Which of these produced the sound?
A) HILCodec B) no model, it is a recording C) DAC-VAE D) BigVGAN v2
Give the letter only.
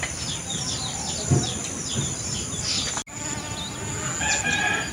B